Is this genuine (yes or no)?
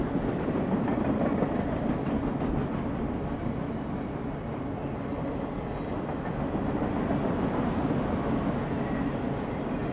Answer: yes